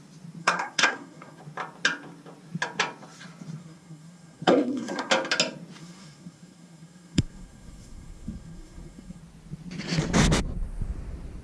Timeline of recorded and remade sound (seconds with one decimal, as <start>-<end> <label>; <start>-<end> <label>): 0.0-0.4 recorded; 0.4-1.4 remade; 1.4-3.6 recorded; 3.6-5.1 remade; 5.1-5.8 recorded; 5.8-9.2 remade; 9.2-11.4 recorded